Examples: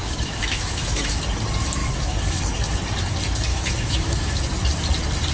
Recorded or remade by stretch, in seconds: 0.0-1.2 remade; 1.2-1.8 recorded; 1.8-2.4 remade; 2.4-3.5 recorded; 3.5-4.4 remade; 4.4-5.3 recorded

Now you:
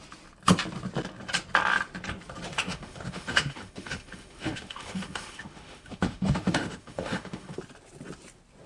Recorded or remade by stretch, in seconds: 0.0-2.5 recorded; 2.5-7.6 remade; 7.6-8.7 recorded

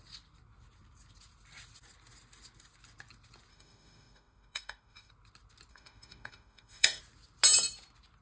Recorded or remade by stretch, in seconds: 0.0-3.5 recorded; 3.5-5.1 remade; 5.1-5.7 recorded; 5.7-7.0 remade; 7.0-8.2 recorded

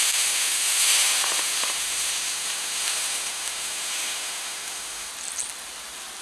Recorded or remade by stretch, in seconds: 0.0-5.1 remade; 5.1-6.2 recorded

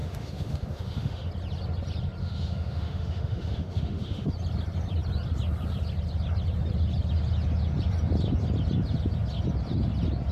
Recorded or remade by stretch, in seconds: 0.0-1.3 remade; 1.3-2.2 recorded; 2.2-4.3 remade; 4.3-10.3 recorded

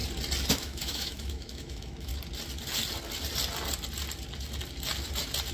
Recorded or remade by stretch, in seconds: 0.0-0.5 recorded; 0.5-2.1 remade; 2.1-5.5 recorded

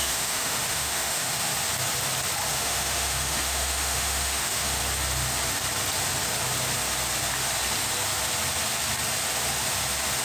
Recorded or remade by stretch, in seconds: 0.0-1.5 remade; 1.5-2.5 recorded; 2.5-4.8 remade; 4.8-10.2 recorded

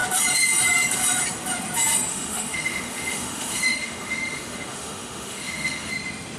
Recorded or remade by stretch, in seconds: 0.0-2.1 recorded; 2.1-5.9 remade; 5.9-6.4 recorded